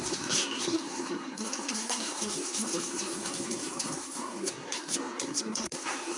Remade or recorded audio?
remade